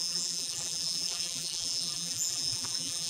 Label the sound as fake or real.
fake